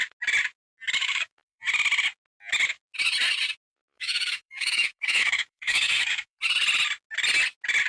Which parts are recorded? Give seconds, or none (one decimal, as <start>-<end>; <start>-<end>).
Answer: 0.0-1.0; 1.6-3.7; 6.4-7.9